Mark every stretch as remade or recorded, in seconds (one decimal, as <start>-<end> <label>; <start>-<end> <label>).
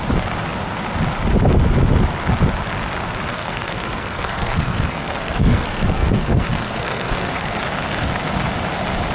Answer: 0.0-3.3 recorded; 3.3-7.6 remade; 7.6-9.1 recorded